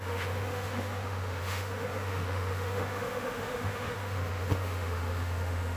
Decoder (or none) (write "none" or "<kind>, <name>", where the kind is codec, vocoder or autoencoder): autoencoder, DAC-VAE